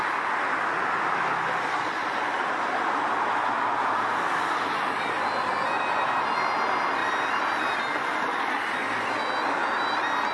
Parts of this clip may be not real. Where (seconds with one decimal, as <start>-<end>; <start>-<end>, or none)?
none